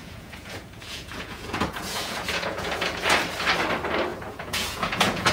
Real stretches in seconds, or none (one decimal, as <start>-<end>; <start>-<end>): 3.2-4.1